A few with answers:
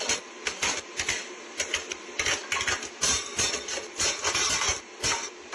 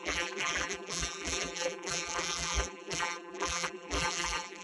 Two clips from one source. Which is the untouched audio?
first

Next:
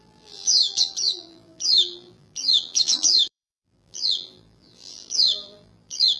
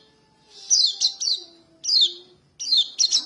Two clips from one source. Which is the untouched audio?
second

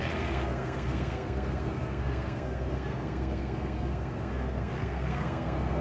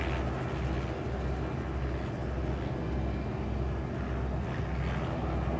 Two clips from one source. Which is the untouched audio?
second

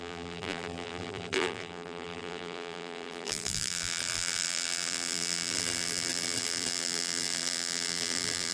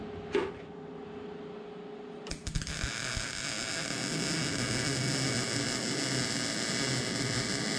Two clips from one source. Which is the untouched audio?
second